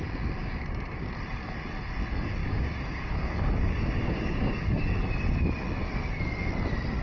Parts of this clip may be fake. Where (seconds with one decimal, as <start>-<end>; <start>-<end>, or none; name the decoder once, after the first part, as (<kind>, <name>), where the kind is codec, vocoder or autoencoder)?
0.4-1.1 (codec, DAC); 2.4-5.0